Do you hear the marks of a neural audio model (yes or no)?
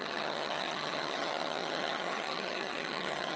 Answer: yes